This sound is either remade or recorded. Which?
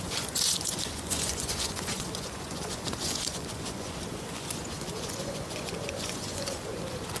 remade